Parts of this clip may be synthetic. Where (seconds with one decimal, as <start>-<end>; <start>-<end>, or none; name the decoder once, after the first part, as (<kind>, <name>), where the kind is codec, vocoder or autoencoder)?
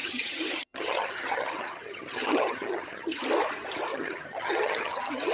0.0-3.2 (vocoder, HiFi-GAN); 3.9-5.3